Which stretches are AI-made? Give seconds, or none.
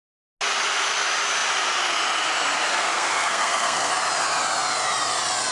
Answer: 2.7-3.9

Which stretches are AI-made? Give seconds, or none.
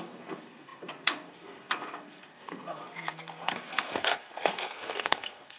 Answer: 0.0-5.6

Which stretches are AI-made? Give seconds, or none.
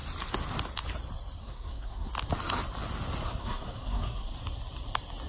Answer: 1.4-2.1; 3.4-4.3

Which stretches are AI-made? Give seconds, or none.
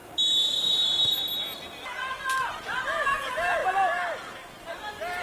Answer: none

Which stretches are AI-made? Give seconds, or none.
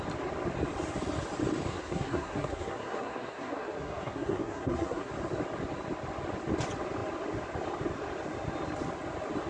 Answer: 1.7-5.1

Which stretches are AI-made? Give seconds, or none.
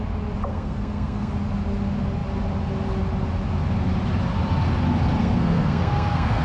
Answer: 0.5-1.3; 5.2-6.4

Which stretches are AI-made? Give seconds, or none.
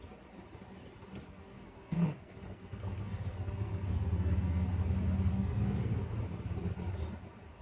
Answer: 1.2-4.7; 5.3-6.0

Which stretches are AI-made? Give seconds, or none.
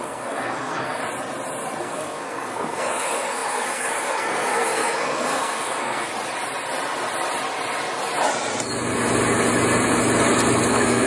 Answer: 0.0-1.0; 1.8-6.1; 10.7-11.1